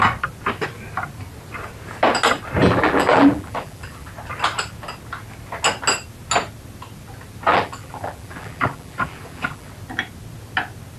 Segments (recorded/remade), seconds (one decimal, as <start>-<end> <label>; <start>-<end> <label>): 0.0-2.6 recorded; 2.6-4.1 remade; 4.1-7.5 recorded; 7.5-9.7 remade; 9.7-11.0 recorded

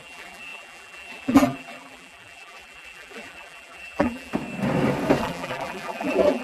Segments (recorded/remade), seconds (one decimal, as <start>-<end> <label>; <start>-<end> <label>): 0.0-4.3 remade; 4.3-5.2 recorded; 5.2-6.4 remade

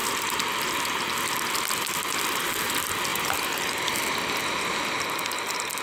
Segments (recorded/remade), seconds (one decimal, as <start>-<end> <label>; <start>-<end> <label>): 0.0-3.1 recorded; 3.1-3.7 remade; 3.7-5.8 recorded

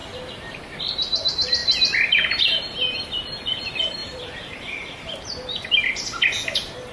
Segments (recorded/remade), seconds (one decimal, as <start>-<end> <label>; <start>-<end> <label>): 0.0-0.8 remade; 0.8-4.0 recorded; 4.0-6.0 remade; 6.0-6.9 recorded